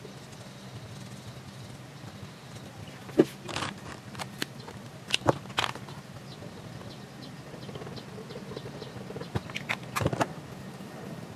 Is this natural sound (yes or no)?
yes